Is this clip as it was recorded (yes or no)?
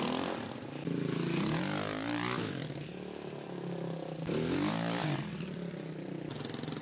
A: yes